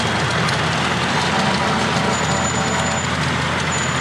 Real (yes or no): yes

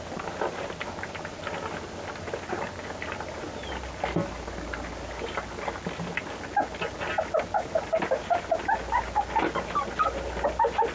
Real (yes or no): yes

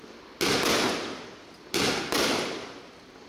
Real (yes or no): yes